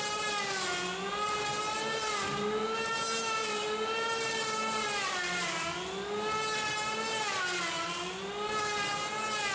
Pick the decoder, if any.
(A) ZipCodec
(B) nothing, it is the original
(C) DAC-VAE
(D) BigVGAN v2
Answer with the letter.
B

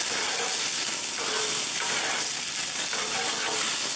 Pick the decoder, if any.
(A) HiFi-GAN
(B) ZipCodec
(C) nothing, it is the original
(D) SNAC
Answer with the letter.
C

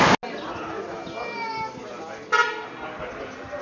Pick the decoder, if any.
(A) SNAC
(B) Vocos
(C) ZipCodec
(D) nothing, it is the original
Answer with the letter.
D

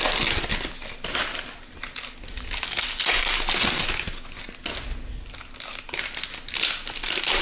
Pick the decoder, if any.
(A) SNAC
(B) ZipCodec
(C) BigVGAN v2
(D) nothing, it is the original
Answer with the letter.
D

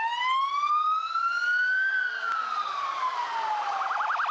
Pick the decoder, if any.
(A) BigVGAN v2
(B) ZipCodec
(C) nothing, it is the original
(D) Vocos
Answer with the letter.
C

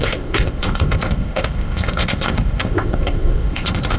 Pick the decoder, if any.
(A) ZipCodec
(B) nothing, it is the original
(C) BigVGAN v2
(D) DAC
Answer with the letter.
A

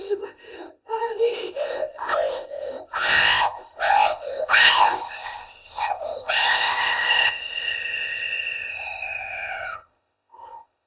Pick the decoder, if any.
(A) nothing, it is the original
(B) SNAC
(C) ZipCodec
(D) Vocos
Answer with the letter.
C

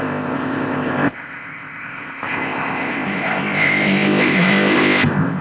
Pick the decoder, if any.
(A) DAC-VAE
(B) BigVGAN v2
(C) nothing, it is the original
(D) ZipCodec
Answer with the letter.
D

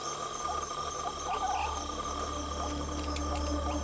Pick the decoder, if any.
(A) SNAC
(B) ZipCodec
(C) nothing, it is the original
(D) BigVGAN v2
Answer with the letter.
C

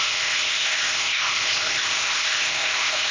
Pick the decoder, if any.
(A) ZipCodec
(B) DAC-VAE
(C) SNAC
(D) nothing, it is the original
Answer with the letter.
A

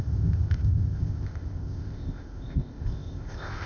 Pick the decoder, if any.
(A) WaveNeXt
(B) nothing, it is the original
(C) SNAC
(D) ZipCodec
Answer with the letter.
D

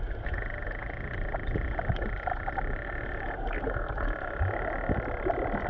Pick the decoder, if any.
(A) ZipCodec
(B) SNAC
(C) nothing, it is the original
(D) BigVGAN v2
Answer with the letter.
C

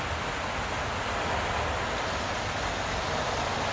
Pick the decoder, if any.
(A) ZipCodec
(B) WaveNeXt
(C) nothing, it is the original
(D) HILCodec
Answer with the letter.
C